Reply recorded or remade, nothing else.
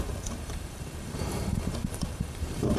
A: remade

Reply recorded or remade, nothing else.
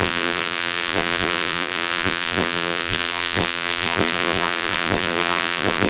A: remade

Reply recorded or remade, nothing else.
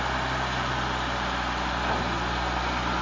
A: recorded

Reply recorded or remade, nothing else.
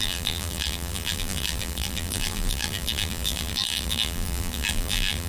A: remade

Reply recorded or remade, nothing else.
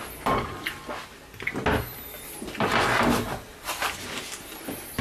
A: recorded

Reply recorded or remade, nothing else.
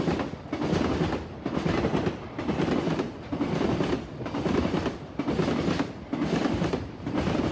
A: recorded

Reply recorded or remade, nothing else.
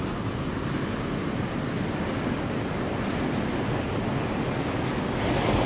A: recorded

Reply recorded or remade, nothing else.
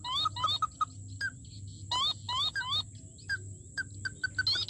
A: recorded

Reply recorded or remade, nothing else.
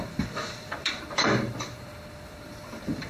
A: remade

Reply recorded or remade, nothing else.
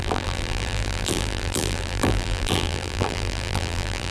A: remade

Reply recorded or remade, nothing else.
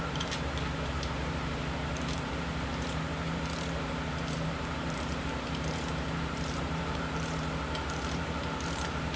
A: remade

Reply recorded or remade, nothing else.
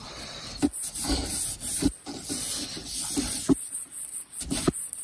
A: recorded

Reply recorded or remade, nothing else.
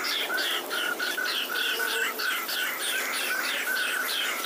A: remade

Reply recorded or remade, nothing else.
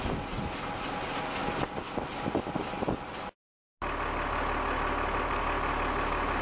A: recorded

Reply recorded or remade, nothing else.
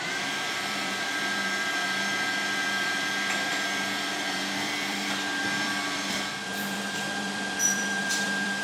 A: remade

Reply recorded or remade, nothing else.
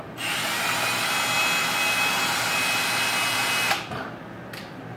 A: recorded